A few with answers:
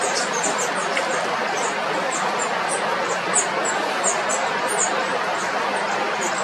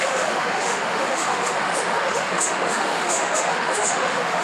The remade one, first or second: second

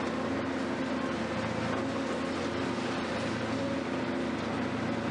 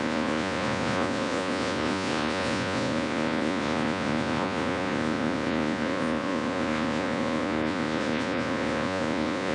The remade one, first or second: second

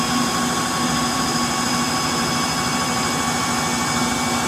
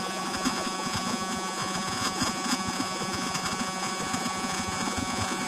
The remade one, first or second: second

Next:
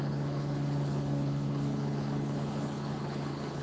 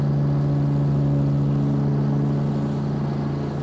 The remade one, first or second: first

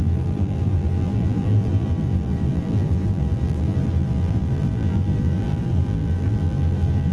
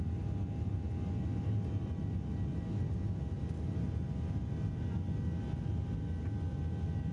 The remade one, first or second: first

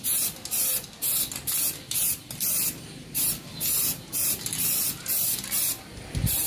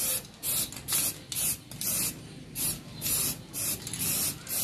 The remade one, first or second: first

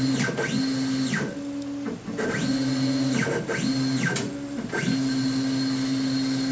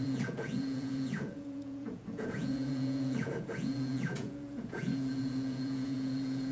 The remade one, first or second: second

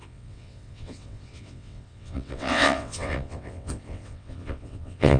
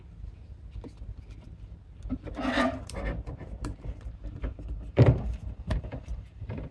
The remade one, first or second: first